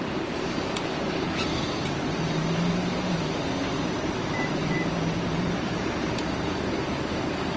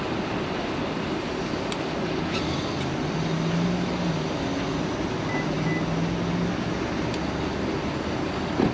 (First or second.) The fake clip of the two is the first